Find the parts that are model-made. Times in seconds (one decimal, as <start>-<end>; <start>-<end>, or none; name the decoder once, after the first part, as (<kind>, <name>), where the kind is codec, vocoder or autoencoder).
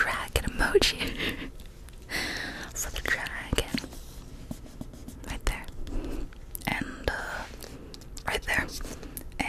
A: none